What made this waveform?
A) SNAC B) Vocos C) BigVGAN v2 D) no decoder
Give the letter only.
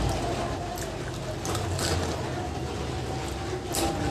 D